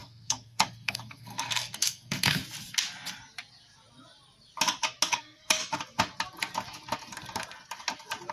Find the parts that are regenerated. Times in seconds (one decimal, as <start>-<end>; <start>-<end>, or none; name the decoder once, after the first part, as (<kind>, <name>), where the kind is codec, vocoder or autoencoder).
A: 0.0-2.4 (codec, SNAC); 5.1-5.6